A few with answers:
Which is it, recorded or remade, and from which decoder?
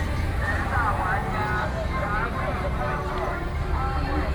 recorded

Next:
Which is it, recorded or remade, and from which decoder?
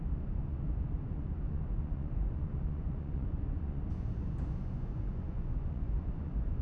remade, vocoder, Vocos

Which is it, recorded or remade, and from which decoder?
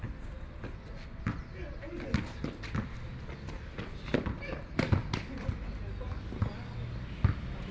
recorded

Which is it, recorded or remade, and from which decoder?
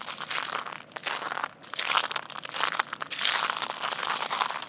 recorded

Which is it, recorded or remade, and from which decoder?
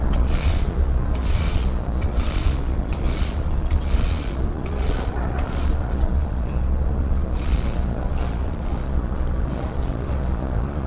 remade, vocoder, Vocos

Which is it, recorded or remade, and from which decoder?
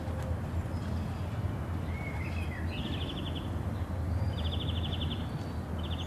recorded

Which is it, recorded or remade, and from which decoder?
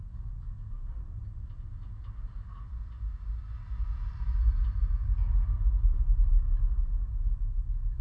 recorded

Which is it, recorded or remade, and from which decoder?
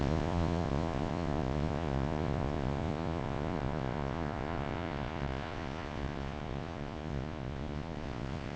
remade, vocoder, Vocos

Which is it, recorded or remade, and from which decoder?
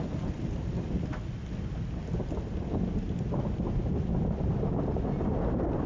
recorded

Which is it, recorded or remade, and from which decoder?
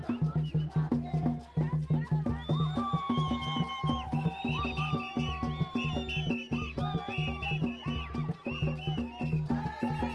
recorded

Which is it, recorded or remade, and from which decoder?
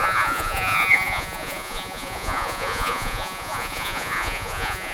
remade, vocoder, Vocos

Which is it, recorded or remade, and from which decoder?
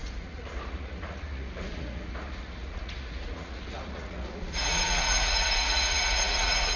remade, vocoder, Vocos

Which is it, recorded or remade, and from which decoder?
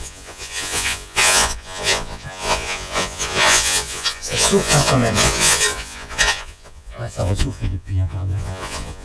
remade, vocoder, Vocos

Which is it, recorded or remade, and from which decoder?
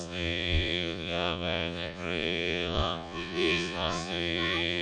remade, vocoder, Vocos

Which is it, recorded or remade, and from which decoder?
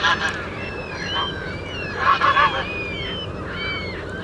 recorded